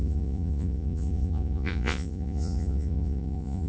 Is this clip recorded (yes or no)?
no